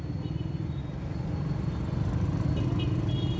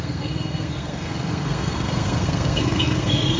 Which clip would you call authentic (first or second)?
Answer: first